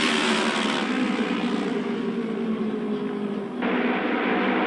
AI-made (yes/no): no